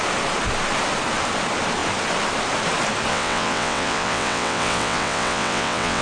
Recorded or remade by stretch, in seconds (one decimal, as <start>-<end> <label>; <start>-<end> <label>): 0.0-3.1 recorded; 3.1-6.0 remade